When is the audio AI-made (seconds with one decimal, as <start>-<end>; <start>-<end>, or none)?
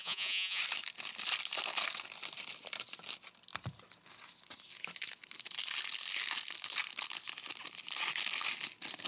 0.0-0.6